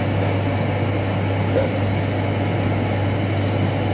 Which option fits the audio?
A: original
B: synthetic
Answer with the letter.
A